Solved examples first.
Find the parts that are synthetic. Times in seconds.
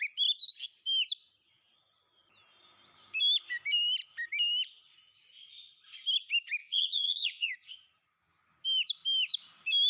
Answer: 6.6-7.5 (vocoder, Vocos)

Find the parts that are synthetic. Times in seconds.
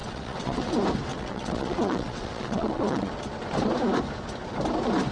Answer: 0.0-0.7 (vocoder, WaveNeXt); 1.1-3.1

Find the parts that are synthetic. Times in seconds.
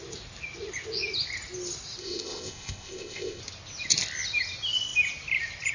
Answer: 2.0-3.4 (codec, ZipCodec)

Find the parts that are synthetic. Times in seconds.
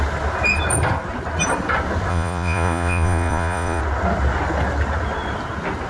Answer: 2.1-3.8 (vocoder, Vocos)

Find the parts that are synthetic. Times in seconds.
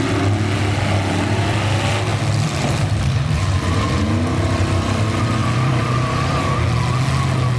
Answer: 2.1-3.4 (vocoder, BigVGAN v2); 5.4-6.4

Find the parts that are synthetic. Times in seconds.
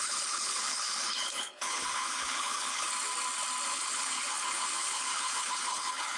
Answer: 0.0-2.9 (codec, HILCodec); 3.7-6.2